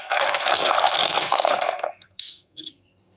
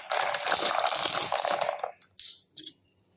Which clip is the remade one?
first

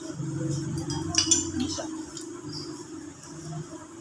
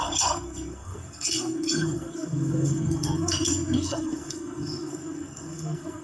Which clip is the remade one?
second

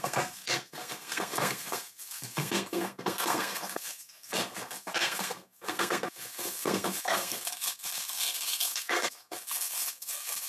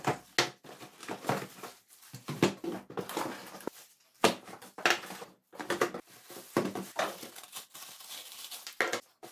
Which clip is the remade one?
first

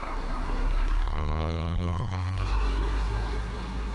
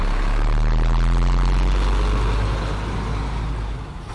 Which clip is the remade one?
first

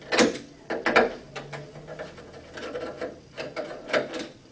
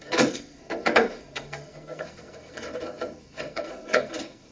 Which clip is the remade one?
second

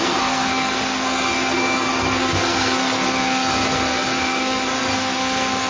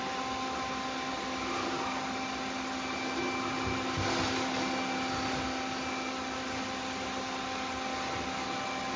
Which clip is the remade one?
first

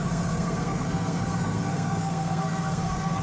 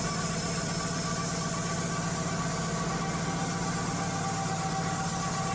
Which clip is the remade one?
first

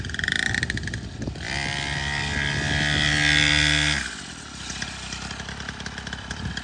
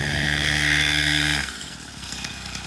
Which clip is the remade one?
second